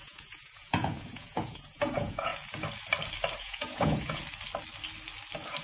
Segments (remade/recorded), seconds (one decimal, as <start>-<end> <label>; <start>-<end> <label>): 0.0-2.3 remade; 2.3-3.4 recorded; 3.4-4.2 remade; 4.2-5.6 recorded

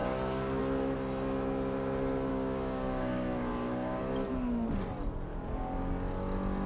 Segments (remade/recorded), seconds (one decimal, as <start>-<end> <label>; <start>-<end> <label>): 0.0-0.6 remade; 0.6-2.3 recorded; 2.3-4.0 remade; 4.0-5.3 recorded; 5.3-5.9 remade; 5.9-6.7 recorded